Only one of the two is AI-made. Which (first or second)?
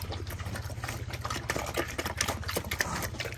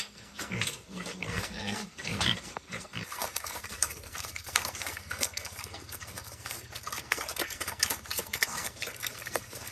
second